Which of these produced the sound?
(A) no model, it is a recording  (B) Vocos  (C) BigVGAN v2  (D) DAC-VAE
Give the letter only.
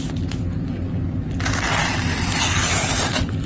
A